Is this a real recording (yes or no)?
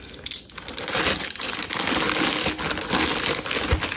yes